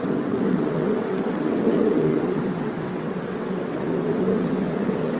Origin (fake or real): fake